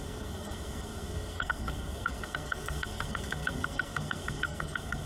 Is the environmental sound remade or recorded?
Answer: remade